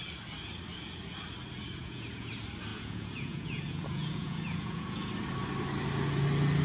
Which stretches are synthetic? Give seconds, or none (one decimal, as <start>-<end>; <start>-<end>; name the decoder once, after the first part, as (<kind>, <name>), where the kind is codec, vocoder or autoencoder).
1.8-2.3 (vocoder, Vocos); 2.7-5.1